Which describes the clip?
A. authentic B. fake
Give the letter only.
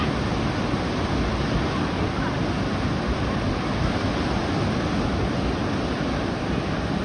A